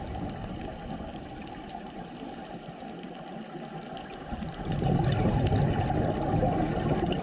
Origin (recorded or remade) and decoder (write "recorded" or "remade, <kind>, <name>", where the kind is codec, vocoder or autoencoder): recorded